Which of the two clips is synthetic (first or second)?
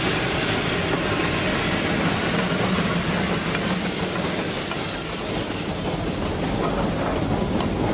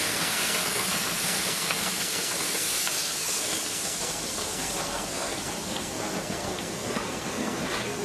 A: second